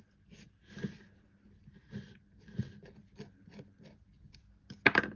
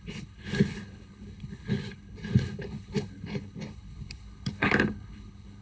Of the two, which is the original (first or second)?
first